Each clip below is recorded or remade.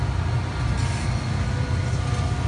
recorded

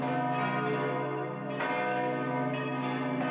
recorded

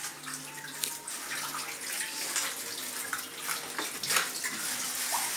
recorded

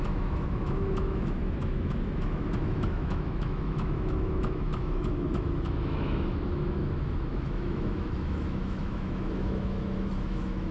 remade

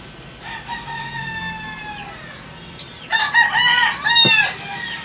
recorded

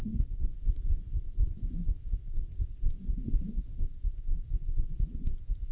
remade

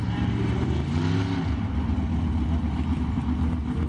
recorded